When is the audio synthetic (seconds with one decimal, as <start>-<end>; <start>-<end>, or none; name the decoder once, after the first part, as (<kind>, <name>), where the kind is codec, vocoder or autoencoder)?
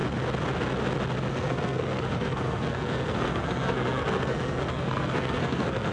1.3-5.9 (codec, SNAC)